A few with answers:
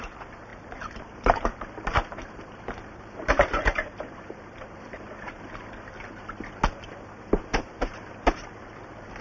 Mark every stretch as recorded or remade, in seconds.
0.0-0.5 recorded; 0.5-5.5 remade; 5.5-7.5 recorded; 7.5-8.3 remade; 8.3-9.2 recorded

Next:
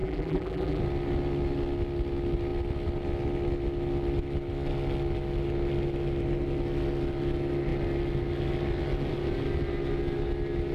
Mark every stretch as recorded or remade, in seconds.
0.0-0.8 remade; 0.8-10.7 recorded

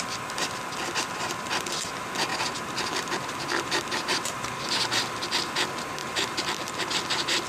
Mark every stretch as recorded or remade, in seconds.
0.0-2.3 recorded; 2.3-4.6 remade; 4.6-6.0 recorded; 6.0-6.9 remade; 6.9-7.5 recorded

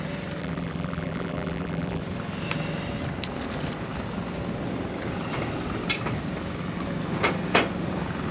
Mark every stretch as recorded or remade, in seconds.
0.0-0.4 recorded; 0.4-2.0 remade; 2.0-8.3 recorded

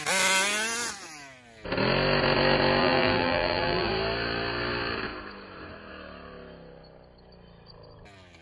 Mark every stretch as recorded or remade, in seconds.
0.0-2.8 recorded; 2.8-3.9 remade; 3.9-8.4 recorded

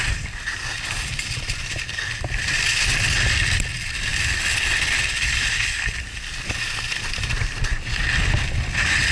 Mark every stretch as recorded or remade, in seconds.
0.0-9.1 recorded

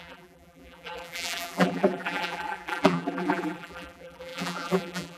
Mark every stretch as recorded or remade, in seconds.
0.0-5.2 remade